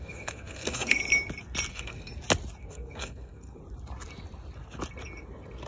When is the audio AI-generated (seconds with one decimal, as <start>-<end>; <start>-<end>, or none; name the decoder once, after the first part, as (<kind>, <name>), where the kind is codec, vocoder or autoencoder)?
0.0-1.0 (codec, SNAC); 1.7-2.1; 2.6-3.6